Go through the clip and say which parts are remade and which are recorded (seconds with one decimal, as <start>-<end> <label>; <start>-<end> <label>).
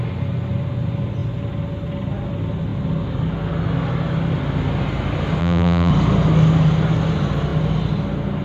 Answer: 0.0-5.4 recorded; 5.4-5.9 remade; 5.9-8.4 recorded